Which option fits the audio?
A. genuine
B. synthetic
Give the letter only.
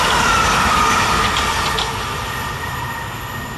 A